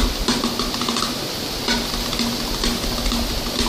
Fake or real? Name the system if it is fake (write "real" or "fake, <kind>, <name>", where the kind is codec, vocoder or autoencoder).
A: real